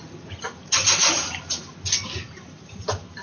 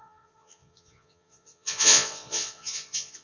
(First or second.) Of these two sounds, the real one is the first